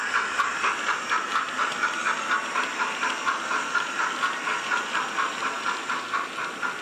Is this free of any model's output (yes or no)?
yes